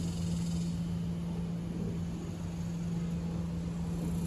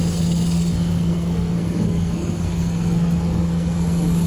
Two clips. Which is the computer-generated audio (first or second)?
second